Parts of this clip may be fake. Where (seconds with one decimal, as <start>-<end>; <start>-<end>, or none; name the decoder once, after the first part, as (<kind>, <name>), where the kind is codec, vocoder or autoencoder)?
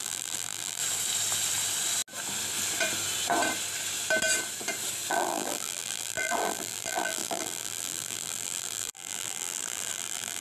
0.0-0.8 (vocoder, BigVGAN v2); 5.1-10.4